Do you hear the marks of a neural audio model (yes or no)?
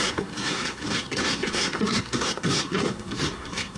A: yes